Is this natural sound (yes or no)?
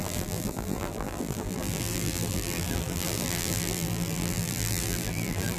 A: no